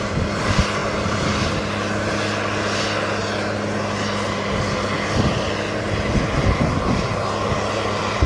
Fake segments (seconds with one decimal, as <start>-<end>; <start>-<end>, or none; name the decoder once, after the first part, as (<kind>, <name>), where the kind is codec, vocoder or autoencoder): none